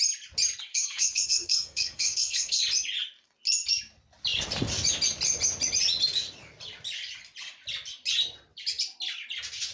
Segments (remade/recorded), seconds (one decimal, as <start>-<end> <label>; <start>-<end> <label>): 0.0-0.7 recorded; 0.7-2.6 remade; 2.6-9.7 recorded